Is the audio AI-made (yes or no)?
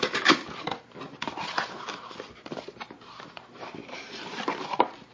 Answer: yes